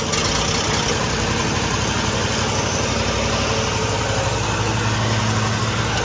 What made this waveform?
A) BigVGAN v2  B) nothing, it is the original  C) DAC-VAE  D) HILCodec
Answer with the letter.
B